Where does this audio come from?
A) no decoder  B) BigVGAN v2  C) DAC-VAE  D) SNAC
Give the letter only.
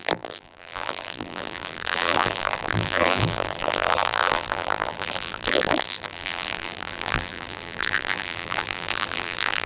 B